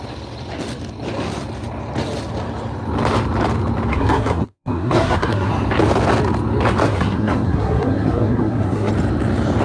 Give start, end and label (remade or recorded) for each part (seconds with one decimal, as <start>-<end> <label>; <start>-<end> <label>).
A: 0.0-3.9 recorded; 3.9-5.5 remade; 5.5-6.8 recorded; 6.8-8.9 remade; 8.9-9.6 recorded